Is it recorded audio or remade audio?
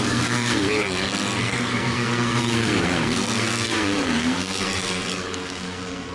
remade